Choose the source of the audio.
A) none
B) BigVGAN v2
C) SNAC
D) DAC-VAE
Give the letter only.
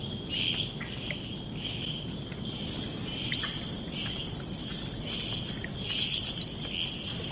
A